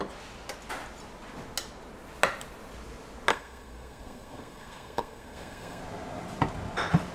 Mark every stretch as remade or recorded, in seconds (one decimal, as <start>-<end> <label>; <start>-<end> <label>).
0.0-3.3 recorded; 3.3-5.8 remade; 5.8-7.1 recorded